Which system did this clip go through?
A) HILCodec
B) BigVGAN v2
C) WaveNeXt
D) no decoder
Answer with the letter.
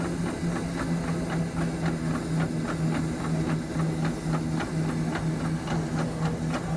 D